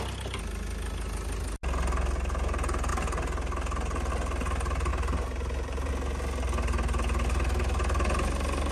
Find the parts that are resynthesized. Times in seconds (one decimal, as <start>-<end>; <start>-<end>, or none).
4.9-5.9